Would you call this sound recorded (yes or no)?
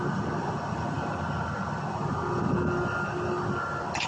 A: yes